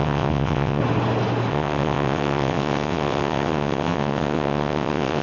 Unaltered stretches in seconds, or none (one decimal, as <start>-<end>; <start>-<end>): 0.8-1.5